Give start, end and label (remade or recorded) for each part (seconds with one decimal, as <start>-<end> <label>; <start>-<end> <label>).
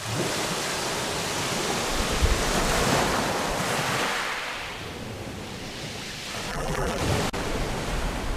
0.0-6.5 recorded; 6.5-7.0 remade; 7.0-8.4 recorded